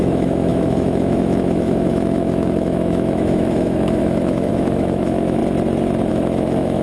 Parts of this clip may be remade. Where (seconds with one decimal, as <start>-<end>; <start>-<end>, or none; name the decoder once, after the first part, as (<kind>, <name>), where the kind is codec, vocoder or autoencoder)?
0.0-5.4 (autoencoder, DAC-VAE); 6.1-6.8